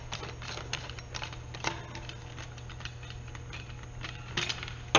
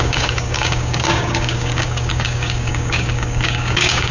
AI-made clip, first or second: second